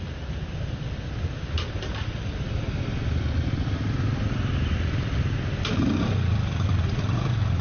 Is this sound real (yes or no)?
yes